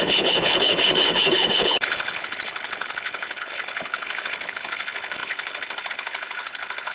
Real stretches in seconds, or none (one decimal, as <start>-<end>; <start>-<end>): none